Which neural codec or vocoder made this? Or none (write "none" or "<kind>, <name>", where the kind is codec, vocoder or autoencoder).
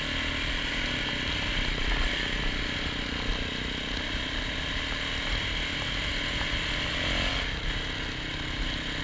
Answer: none